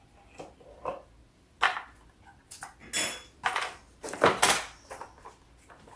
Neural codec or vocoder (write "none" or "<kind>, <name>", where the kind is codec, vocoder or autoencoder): none